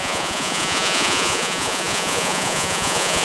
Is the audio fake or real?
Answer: fake